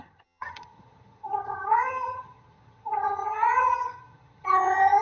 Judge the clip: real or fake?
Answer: fake